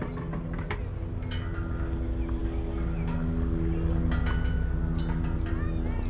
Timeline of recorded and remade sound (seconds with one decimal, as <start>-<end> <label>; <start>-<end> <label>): 0.0-6.1 recorded